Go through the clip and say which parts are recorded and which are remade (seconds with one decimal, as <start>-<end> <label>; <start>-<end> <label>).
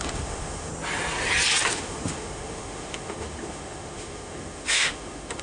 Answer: 0.0-0.7 remade; 0.7-1.7 recorded; 1.7-5.4 remade